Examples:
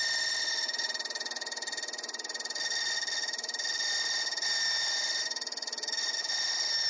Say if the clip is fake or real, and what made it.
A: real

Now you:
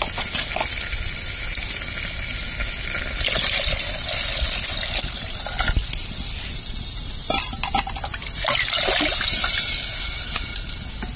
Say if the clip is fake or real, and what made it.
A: real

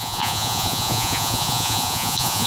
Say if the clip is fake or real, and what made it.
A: fake, vocoder, Vocos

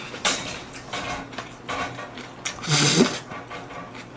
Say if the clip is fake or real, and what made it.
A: fake, vocoder, BigVGAN v2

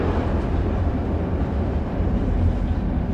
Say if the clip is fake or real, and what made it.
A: fake, vocoder, BigVGAN v2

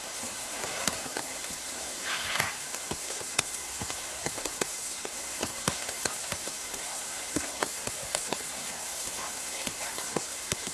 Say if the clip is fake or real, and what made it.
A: fake, codec, SNAC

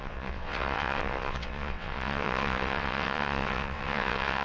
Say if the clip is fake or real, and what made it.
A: fake, vocoder, WaveNeXt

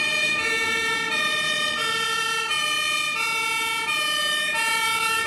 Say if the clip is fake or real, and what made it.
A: fake, vocoder, BigVGAN v2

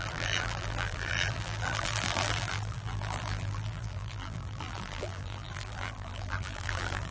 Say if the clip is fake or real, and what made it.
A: fake, vocoder, BigVGAN v2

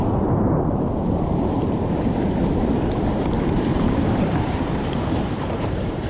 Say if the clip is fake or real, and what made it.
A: fake, vocoder, BigVGAN v2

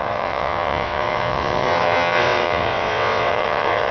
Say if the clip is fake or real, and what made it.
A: fake, vocoder, WaveNeXt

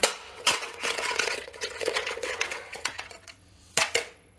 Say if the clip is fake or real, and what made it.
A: fake, vocoder, WaveNeXt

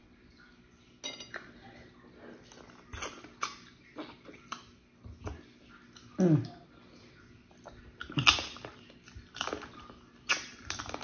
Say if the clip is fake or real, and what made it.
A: real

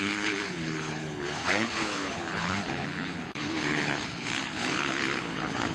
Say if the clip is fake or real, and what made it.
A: fake, codec, HILCodec